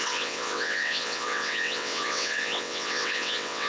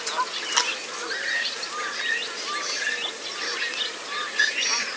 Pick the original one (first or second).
second